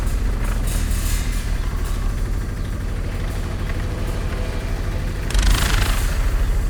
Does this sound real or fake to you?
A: fake